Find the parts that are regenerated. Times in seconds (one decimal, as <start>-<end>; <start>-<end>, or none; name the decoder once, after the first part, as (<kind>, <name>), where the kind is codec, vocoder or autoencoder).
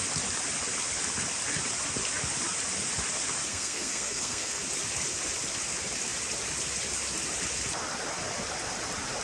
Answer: 3.5-4.6 (codec, SNAC)